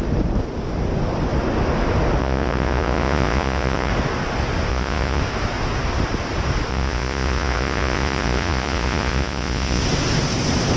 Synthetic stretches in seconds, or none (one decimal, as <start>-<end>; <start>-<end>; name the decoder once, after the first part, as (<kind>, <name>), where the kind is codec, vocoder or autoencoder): 2.2-3.9 (vocoder, Vocos); 4.7-5.2; 6.7-9.8